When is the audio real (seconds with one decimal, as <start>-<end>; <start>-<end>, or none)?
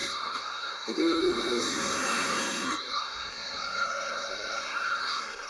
none